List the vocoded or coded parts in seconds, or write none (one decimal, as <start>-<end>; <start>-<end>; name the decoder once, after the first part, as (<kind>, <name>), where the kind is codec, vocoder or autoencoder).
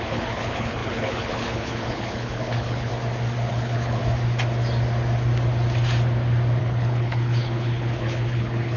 0.0-2.9 (codec, HILCodec); 3.5-4.0; 6.6-8.8